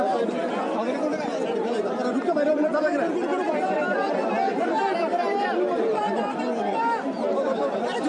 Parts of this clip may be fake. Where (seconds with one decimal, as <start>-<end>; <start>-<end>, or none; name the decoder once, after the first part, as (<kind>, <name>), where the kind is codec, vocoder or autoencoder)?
0.0-0.4 (vocoder, BigVGAN v2); 2.2-8.1